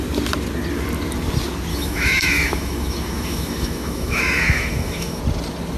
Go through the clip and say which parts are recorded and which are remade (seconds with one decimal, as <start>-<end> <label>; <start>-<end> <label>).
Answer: 0.0-1.7 recorded; 1.7-5.2 remade; 5.2-5.8 recorded